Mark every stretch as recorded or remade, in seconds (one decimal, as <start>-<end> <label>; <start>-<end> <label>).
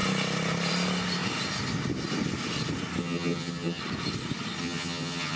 0.0-3.0 recorded; 3.0-3.8 remade; 3.8-4.6 recorded; 4.6-5.4 remade